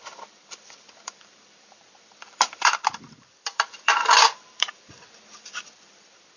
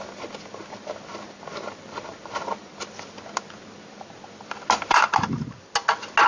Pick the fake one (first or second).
first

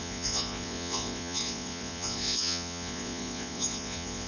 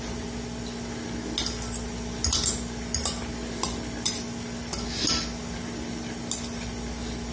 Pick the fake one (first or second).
first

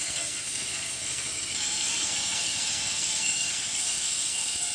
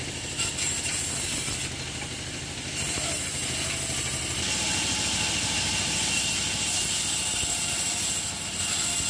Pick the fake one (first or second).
first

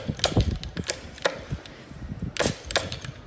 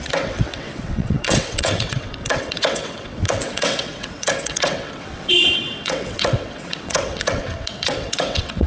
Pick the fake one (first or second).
second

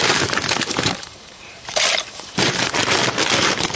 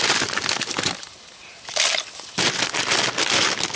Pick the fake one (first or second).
first